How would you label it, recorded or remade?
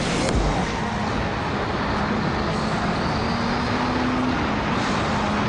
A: recorded